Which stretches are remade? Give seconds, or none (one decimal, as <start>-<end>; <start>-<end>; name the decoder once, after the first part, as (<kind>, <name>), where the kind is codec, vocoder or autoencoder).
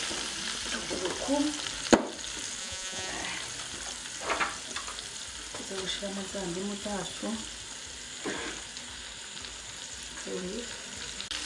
2.6-3.1 (vocoder, Vocos)